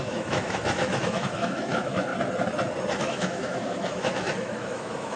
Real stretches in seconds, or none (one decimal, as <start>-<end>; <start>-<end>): 2.1-3.0